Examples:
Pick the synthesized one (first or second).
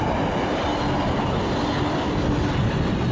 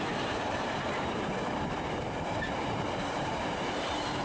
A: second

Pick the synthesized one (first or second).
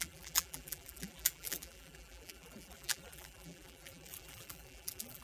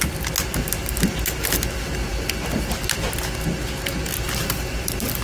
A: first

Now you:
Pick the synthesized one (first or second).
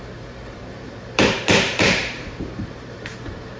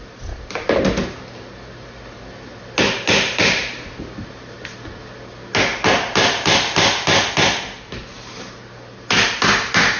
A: first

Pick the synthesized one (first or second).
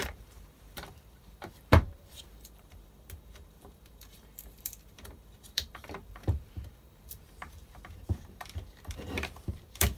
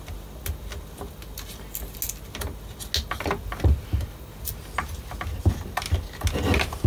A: first